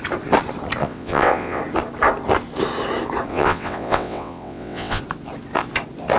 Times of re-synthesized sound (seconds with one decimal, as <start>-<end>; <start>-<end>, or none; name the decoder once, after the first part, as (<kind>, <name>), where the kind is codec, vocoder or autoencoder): 0.8-1.6 (vocoder, WaveNeXt); 3.3-5.0